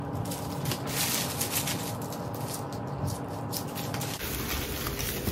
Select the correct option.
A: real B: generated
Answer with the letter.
A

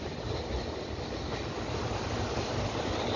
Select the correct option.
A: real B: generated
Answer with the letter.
A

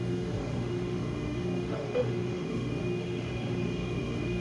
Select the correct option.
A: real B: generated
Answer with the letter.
B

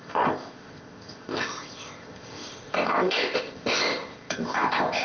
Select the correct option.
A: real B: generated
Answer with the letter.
B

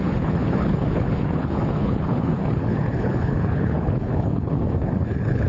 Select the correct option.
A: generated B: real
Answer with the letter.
A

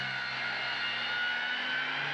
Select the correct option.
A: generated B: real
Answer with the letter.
B